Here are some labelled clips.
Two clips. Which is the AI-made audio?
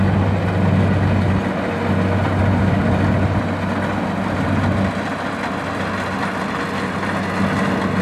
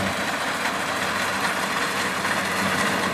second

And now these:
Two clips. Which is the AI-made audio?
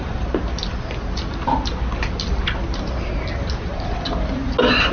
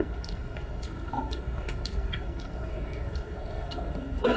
second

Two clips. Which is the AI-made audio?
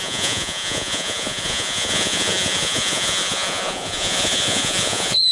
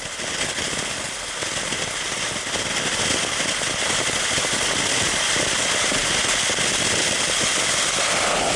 first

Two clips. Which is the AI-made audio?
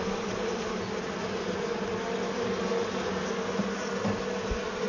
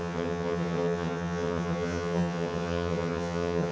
second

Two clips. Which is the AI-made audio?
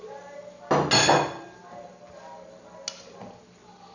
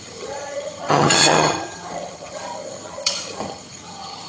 second